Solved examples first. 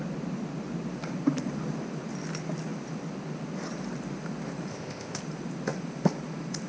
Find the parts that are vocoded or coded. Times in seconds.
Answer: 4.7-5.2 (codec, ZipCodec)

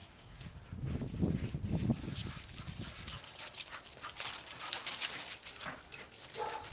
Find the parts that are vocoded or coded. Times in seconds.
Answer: 0.0-0.5 (codec, SNAC)

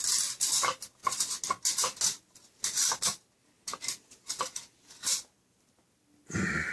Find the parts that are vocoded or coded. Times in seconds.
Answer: none

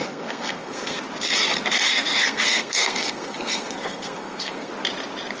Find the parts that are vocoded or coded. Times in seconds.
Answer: 0.0-1.0 (codec, SNAC); 1.9-4.7